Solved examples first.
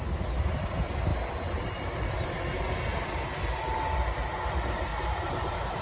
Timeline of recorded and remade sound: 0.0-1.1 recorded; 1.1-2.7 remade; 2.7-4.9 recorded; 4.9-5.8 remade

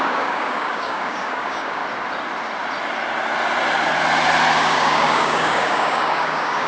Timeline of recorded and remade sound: 0.0-1.8 remade; 1.8-4.5 recorded; 4.5-6.7 remade